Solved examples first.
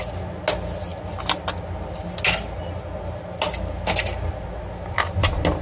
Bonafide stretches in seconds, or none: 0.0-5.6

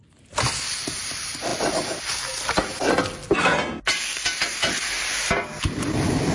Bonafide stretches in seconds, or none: 0.0-6.3

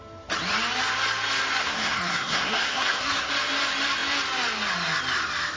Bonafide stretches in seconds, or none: 0.0-1.6; 3.3-5.6

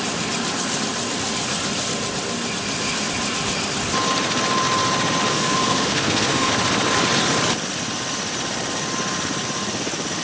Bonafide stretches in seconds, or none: 0.0-5.3; 6.5-10.2

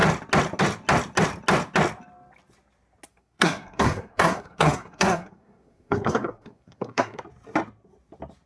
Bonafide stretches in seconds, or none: 0.0-3.1; 7.2-8.5